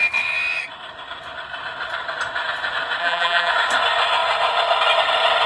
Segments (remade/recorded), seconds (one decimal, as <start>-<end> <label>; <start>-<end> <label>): 0.0-3.0 recorded; 3.0-3.5 remade; 3.5-5.5 recorded